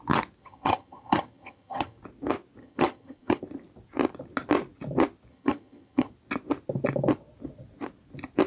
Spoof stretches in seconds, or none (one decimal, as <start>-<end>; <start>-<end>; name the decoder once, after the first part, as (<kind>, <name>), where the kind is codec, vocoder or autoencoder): 0.4-2.0 (vocoder, HiFi-GAN); 2.6-3.4; 5.3-6.1